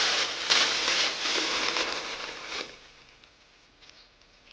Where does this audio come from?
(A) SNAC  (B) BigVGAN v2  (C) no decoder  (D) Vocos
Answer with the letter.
C